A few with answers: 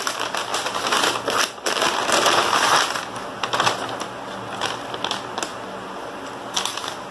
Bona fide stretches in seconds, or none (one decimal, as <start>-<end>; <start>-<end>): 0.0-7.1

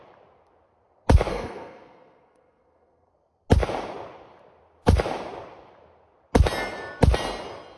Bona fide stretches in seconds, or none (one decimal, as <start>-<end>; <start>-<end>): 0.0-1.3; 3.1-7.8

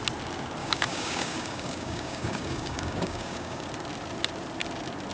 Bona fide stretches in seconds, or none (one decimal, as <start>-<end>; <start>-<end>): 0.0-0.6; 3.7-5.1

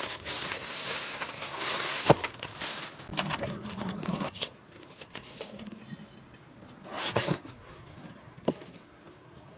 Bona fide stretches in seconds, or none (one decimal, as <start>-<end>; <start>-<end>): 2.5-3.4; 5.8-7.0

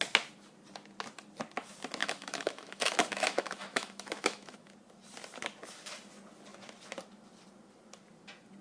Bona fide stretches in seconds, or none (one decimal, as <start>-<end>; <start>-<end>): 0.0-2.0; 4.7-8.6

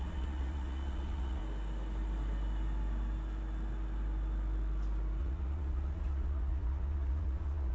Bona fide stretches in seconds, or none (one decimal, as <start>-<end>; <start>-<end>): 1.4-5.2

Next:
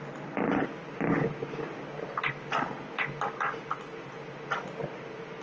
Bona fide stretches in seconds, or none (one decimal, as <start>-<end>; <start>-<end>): 0.0-5.4